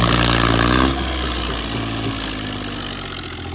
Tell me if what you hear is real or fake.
real